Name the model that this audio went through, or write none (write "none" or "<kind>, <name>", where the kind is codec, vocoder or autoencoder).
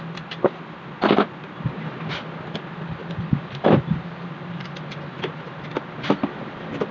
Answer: none